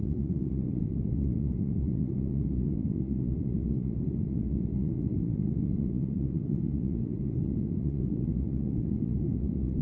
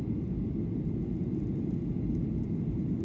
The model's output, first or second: first